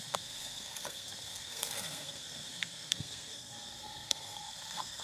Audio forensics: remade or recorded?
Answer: remade